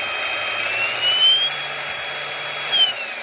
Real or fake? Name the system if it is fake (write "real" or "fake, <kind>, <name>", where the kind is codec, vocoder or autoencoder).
real